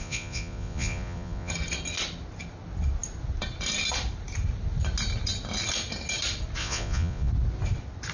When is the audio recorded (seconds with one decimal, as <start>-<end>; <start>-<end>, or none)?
1.5-6.6; 7.3-8.1